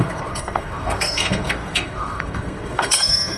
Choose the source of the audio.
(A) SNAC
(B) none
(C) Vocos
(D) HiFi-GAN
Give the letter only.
A